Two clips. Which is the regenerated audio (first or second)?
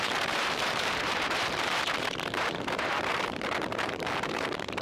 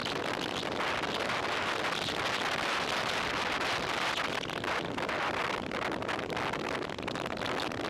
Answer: first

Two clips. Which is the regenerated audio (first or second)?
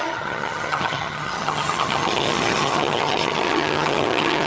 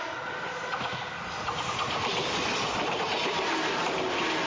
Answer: first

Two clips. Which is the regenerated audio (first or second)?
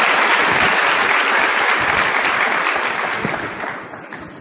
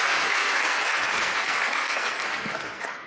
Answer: second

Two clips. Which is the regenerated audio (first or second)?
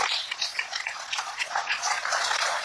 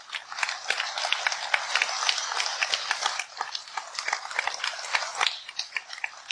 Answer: first